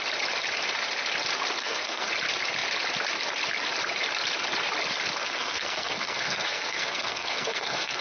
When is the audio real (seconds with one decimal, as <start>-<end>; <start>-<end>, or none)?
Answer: 0.0-1.6; 2.1-5.2